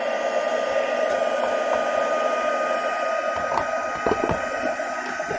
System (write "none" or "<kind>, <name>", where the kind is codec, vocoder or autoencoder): none